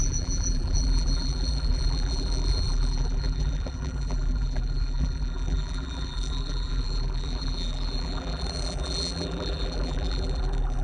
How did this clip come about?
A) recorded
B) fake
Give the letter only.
B